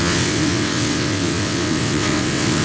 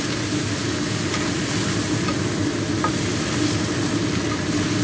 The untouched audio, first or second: second